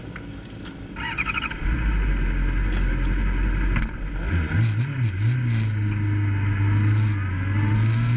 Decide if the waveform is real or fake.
real